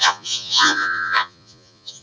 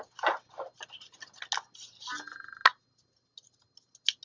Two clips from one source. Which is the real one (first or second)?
second